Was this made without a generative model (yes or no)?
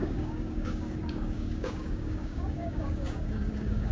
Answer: no